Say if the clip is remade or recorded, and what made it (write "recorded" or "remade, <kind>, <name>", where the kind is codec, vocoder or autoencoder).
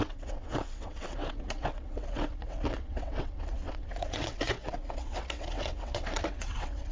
remade, vocoder, WaveNeXt